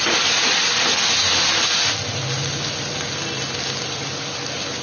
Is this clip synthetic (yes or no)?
no